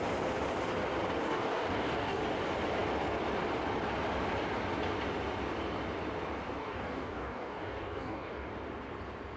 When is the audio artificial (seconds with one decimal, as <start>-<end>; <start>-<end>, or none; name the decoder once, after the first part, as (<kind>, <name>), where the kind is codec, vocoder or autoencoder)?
1.2-2.2 (codec, DAC); 6.6-8.5